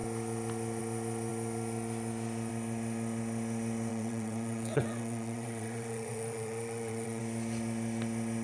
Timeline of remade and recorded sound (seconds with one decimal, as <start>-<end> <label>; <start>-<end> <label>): 0.0-3.9 recorded; 3.9-7.2 remade; 7.2-8.4 recorded